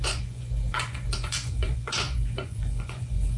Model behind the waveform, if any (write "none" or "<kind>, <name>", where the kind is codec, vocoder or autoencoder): vocoder, Vocos